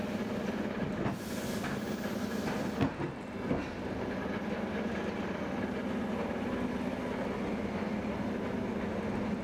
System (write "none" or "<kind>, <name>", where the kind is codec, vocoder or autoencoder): none